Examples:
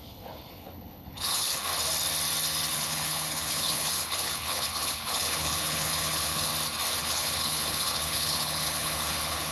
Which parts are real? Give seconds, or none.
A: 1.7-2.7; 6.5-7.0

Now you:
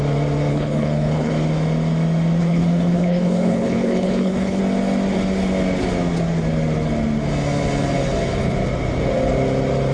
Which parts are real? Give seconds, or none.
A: 0.0-0.5; 1.3-2.4; 4.6-9.9

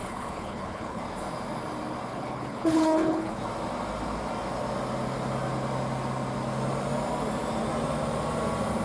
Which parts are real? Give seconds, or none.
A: 1.0-2.1; 3.4-8.8

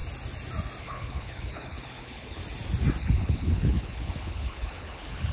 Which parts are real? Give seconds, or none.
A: 0.0-0.8; 2.4-3.0